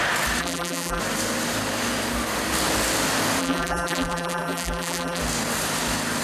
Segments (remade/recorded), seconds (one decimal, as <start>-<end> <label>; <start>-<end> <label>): 0.0-0.4 recorded; 0.4-1.0 remade; 1.0-3.4 recorded; 3.4-5.2 remade; 5.2-6.2 recorded